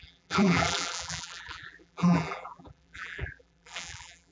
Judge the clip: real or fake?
fake